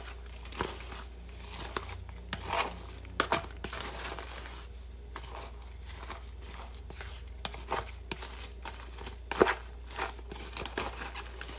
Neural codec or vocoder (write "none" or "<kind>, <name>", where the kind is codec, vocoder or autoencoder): none